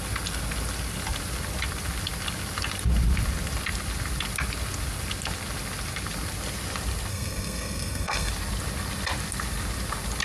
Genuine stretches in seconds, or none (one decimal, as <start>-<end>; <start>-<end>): 0.0-7.1; 8.3-10.2